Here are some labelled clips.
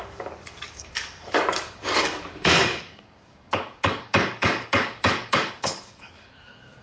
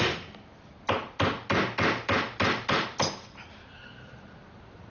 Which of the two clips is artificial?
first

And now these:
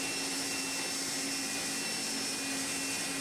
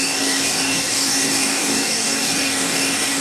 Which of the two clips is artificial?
second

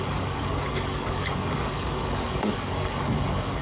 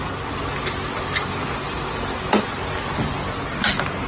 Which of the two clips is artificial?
first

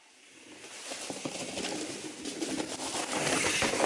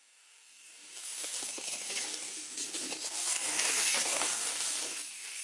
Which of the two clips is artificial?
second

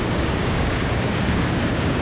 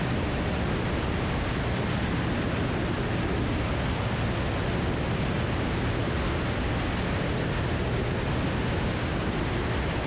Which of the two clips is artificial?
first